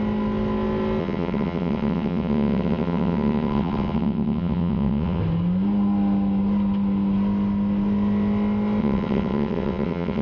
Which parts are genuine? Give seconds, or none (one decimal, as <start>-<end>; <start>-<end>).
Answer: 0.0-1.0; 5.2-8.8

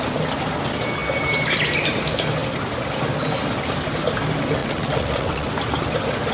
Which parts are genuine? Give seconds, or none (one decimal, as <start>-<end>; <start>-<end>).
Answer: 0.0-4.6; 5.5-6.3

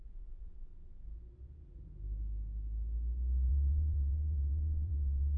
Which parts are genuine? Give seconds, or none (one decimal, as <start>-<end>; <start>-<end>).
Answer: 0.7-3.5

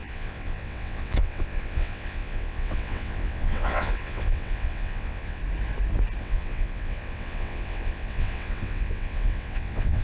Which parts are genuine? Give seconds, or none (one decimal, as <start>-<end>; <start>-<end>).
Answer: 5.4-6.2

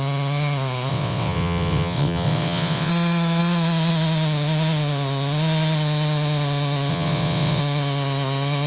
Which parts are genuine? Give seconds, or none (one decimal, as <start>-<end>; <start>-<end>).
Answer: 0.0-0.9; 2.9-6.9; 7.6-8.7

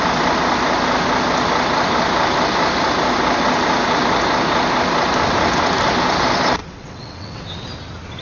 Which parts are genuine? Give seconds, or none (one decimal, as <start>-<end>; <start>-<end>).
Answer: 0.0-6.6; 7.4-8.2

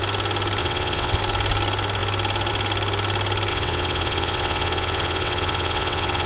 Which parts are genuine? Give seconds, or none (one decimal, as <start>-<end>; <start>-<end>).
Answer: 0.0-0.6; 1.2-3.5

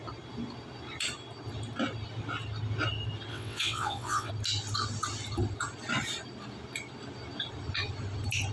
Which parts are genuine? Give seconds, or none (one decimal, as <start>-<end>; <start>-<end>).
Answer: 0.0-3.3; 4.3-8.5